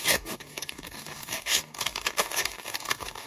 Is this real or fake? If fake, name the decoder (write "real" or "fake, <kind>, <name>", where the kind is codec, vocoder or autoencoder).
fake, codec, DAC